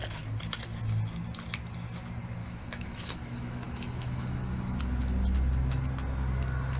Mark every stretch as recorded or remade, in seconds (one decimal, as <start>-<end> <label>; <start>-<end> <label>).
0.0-2.4 recorded; 2.4-4.8 remade; 4.8-6.8 recorded